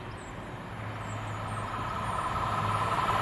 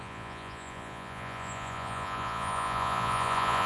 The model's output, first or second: second